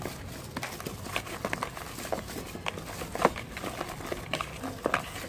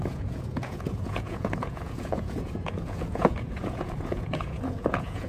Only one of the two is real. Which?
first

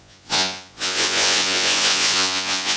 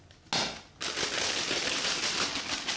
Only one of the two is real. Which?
second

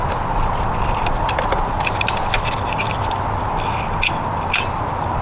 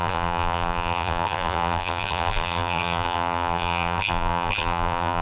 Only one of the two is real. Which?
first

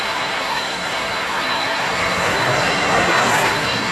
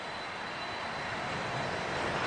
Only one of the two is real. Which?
second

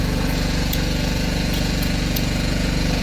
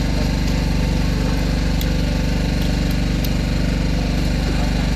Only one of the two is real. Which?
second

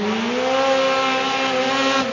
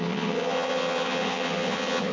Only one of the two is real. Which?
first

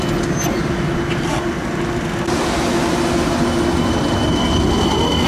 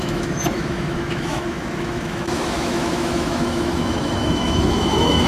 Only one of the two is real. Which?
first